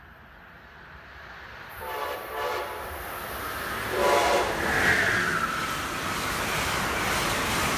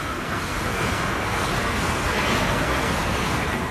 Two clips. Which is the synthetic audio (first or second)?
second